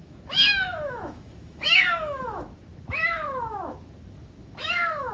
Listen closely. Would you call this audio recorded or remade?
remade